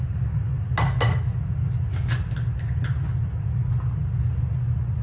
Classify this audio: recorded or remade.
recorded